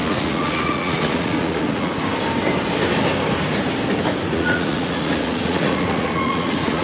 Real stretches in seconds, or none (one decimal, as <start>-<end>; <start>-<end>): 1.9-4.3